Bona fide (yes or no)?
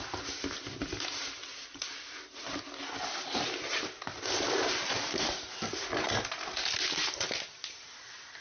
yes